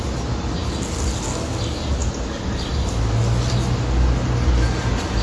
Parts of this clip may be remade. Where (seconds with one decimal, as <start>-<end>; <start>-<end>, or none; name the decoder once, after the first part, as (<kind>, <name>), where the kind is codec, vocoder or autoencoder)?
none